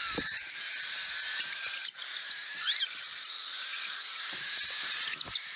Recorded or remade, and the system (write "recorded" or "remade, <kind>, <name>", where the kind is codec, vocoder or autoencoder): recorded